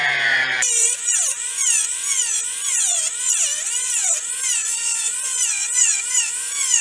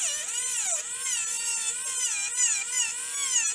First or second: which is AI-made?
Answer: first